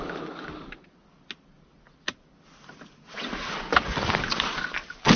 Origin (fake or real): real